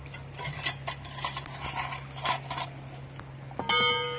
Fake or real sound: real